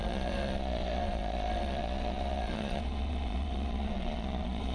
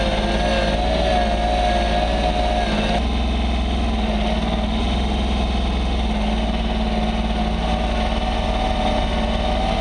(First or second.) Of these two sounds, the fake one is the first